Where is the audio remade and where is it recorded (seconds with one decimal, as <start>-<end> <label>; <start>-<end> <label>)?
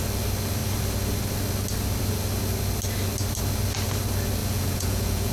0.0-4.4 recorded; 4.4-5.3 remade